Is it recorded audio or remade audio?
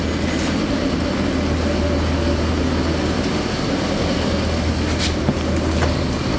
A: recorded